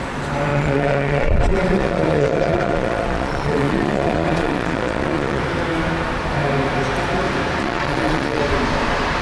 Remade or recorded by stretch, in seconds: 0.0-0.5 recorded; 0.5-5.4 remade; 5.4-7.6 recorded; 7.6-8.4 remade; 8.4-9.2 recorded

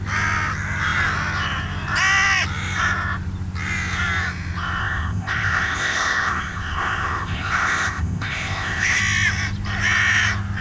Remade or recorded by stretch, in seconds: 0.0-4.8 recorded; 4.8-9.0 remade; 9.0-10.6 recorded